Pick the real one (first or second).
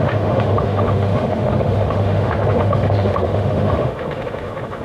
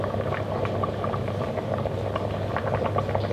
second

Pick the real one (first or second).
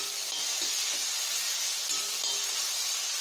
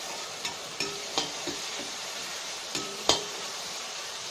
first